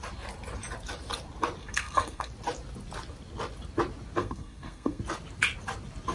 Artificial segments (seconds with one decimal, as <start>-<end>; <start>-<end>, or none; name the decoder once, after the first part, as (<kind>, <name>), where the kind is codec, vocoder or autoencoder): 1.6-2.3 (codec, SNAC); 4.2-5.0